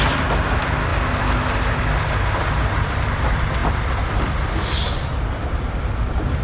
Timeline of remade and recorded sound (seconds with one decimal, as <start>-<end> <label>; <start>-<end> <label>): 0.0-6.4 recorded